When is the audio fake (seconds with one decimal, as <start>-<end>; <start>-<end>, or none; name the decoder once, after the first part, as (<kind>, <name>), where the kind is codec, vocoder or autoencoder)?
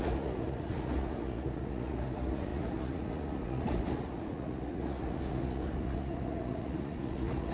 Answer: 0.0-7.5 (vocoder, Vocos)